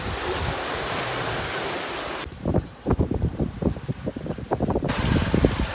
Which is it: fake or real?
fake